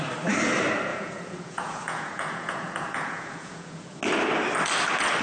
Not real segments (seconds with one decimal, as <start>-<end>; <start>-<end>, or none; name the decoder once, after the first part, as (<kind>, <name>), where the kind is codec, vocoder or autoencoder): 0.9-4.0 (vocoder, Vocos)

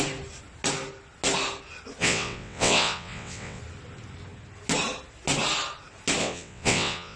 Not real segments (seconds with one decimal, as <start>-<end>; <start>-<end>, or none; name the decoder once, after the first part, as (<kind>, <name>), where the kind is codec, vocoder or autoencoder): 2.0-3.6 (vocoder, WaveNeXt); 6.2-7.2

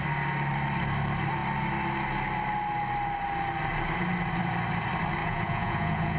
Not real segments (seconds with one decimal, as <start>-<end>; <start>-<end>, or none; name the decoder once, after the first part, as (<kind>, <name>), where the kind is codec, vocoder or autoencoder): 5.2-6.2 (vocoder, Vocos)

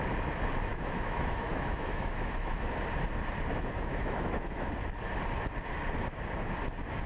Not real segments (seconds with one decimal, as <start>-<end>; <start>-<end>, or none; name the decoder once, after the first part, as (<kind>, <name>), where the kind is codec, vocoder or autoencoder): 0.7-2.7 (autoencoder, DAC-VAE); 3.5-4.7

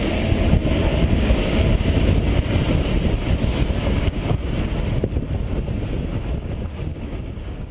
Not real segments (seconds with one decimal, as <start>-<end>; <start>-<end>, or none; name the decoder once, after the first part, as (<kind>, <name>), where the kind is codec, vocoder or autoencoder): 0.9-1.5 (codec, DAC); 3.8-4.3; 6.9-7.7

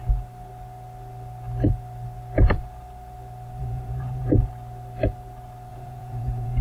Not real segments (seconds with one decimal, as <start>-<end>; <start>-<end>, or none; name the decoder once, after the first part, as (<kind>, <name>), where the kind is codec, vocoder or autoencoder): 3.6-4.5 (vocoder, Vocos); 5.7-6.6

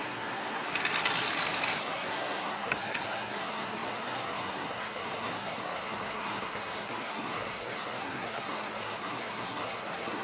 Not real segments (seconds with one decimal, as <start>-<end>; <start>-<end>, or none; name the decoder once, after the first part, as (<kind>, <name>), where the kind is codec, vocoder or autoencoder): 0.0-0.7 (codec, SNAC); 1.8-10.2